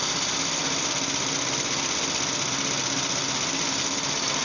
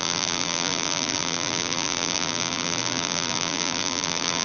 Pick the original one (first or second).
first